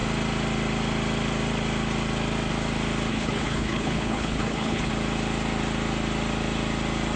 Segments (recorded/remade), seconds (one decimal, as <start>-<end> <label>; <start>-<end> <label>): 0.0-3.1 recorded; 3.1-4.9 remade; 4.9-7.2 recorded